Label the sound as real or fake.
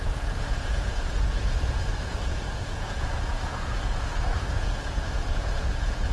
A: fake